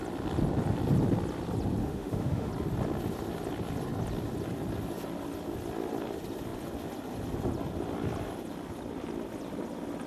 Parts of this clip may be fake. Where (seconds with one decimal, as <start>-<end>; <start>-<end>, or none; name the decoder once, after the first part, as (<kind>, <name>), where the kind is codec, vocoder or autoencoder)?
1.8-2.5 (autoencoder, DAC-VAE)